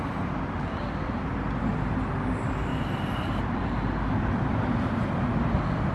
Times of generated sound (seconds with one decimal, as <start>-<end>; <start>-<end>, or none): 2.7-3.2